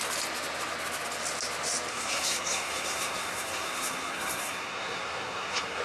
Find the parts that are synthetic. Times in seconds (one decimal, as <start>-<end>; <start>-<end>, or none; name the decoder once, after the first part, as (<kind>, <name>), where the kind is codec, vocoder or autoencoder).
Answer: 1.9-5.8 (codec, SNAC)